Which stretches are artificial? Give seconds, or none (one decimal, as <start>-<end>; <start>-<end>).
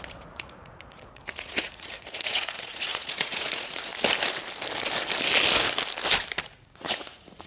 0.0-3.9; 6.4-7.5